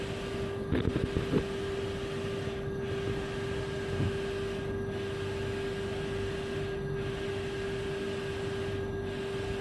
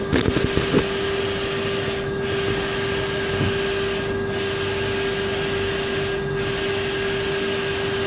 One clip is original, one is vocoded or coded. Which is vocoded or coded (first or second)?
first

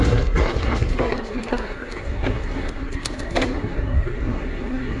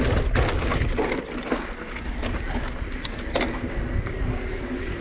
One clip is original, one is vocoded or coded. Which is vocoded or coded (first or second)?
first